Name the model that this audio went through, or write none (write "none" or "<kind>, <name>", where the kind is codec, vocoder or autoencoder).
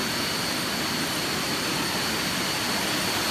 none